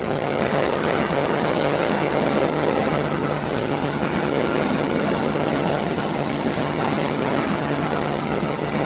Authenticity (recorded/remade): remade